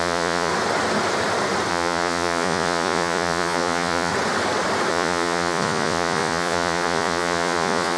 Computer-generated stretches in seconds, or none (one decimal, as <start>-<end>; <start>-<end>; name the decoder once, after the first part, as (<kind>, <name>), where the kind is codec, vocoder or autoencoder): 0.0-0.5 (vocoder, Vocos); 1.7-4.1; 4.9-8.0